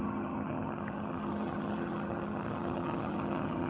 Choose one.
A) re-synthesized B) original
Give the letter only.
A